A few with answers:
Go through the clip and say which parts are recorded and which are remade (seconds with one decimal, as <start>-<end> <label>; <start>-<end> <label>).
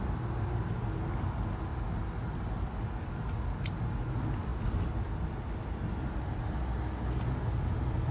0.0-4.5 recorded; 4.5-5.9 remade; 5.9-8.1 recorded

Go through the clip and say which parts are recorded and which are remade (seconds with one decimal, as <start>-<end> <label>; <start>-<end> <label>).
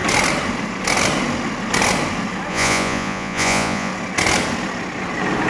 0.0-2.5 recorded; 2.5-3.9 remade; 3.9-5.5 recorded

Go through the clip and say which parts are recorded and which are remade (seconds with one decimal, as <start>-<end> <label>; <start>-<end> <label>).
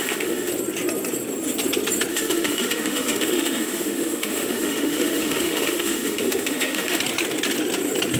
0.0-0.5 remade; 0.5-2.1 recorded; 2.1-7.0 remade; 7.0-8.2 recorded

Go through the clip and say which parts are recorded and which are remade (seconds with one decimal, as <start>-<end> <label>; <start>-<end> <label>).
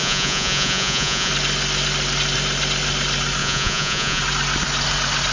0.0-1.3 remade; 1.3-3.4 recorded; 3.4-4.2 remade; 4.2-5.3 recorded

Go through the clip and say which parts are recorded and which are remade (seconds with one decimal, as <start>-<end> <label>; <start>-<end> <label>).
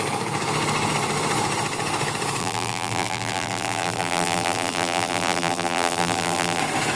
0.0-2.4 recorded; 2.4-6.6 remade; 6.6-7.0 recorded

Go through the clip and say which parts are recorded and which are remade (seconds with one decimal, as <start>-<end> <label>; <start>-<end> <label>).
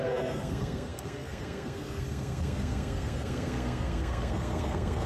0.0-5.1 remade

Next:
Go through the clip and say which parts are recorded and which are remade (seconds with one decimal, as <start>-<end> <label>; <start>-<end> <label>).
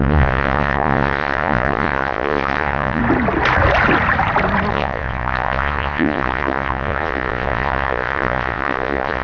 0.0-3.0 remade; 3.0-4.7 recorded; 4.7-9.2 remade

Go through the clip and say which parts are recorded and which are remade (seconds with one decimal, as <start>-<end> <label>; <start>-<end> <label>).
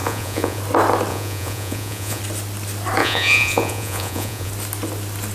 0.0-0.6 remade; 0.6-1.1 recorded; 1.1-2.2 remade; 2.2-3.0 recorded; 3.0-4.5 remade; 4.5-5.3 recorded